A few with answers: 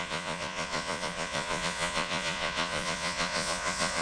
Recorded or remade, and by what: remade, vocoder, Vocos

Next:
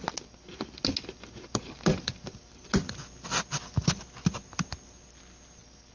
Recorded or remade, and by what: recorded